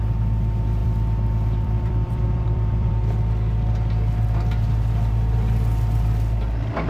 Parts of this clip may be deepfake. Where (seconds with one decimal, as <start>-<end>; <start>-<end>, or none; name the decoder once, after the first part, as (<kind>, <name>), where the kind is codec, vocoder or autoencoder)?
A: 0.8-2.9 (vocoder, BigVGAN v2)